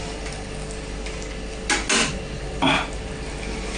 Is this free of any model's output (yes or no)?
yes